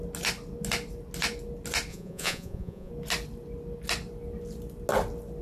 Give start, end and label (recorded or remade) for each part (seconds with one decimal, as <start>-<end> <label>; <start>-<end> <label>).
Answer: 0.0-1.9 recorded; 1.9-2.9 remade; 2.9-5.4 recorded